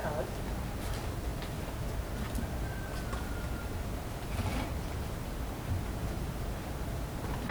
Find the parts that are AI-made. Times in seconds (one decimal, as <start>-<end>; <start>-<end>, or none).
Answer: none